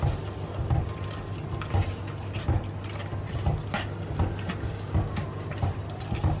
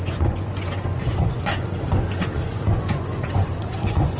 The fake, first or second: second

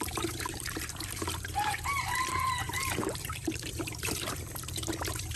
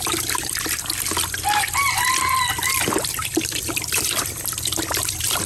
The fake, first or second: first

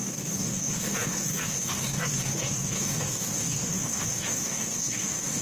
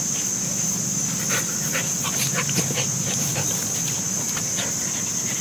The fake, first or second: first